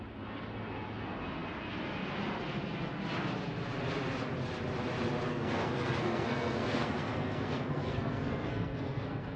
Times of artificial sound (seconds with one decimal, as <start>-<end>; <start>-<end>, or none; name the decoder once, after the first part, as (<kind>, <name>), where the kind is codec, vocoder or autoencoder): 5.3-9.4 (codec, SNAC)